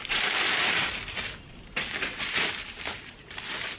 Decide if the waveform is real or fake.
fake